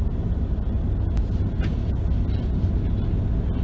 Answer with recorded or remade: recorded